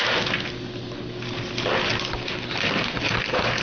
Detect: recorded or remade recorded